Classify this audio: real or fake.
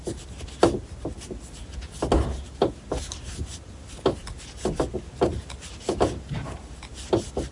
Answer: real